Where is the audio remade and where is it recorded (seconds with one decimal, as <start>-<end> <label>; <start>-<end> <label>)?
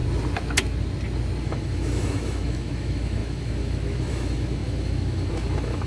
0.0-1.4 recorded; 1.4-5.9 remade